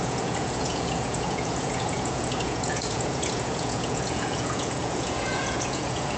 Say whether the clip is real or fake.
fake